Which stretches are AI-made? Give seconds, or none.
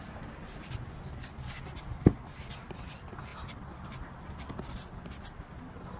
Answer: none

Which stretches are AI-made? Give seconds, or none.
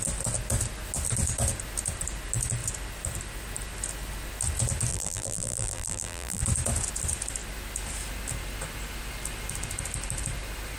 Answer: 4.9-6.4 (vocoder, BigVGAN v2)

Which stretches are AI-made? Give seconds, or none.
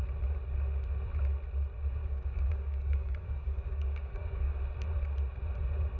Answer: 2.0-4.6 (codec, DAC)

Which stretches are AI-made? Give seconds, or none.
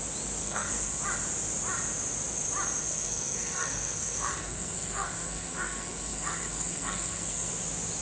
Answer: 0.4-1.0 (codec, SNAC); 2.8-7.5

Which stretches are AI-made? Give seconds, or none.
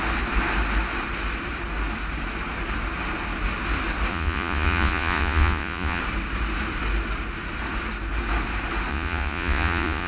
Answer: 4.1-6.0 (vocoder, Vocos); 8.9-10.1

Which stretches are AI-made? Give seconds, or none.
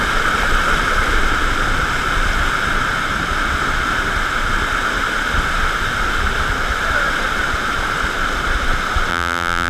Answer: 9.1-9.7 (vocoder, BigVGAN v2)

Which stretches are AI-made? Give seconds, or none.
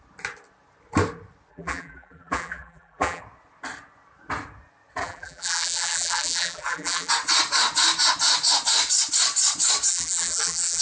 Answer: 1.5-3.2 (vocoder, BigVGAN v2); 5.0-7.1; 9.9-10.8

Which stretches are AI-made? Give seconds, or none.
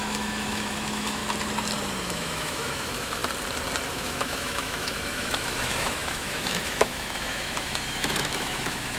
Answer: 0.0-1.2 (autoencoder, DAC-VAE); 2.0-3.2; 3.9-9.0